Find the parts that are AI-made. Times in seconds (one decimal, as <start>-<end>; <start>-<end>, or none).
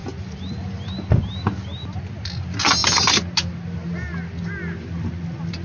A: none